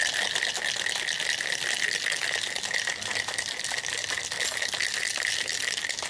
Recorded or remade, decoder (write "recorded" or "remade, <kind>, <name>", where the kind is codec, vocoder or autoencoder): recorded